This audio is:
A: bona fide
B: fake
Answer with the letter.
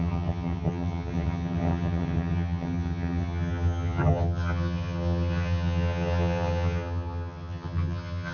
B